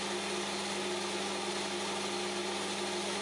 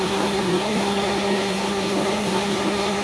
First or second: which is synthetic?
second